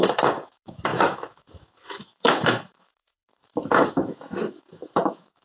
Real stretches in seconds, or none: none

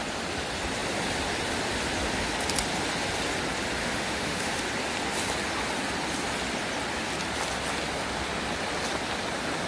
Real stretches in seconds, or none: 0.0-3.8; 4.6-9.7